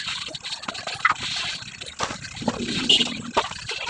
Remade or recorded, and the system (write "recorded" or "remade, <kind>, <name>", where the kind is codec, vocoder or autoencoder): recorded